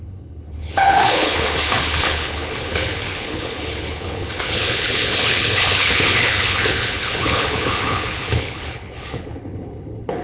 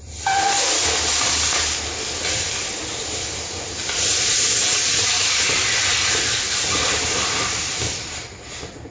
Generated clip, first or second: first